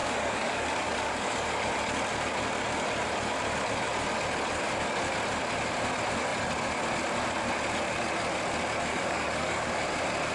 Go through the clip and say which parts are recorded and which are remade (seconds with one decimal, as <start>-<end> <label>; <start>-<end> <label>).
0.0-1.7 remade; 1.7-8.9 recorded; 8.9-9.7 remade; 9.7-10.3 recorded